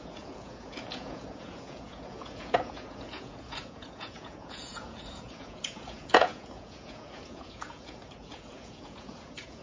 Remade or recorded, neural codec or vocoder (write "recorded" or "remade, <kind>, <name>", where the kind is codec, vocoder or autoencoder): remade, vocoder, Vocos